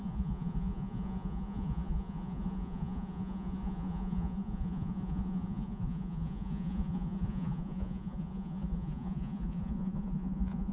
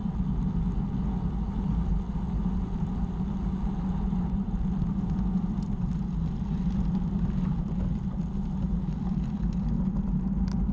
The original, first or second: second